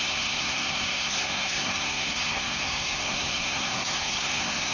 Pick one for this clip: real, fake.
fake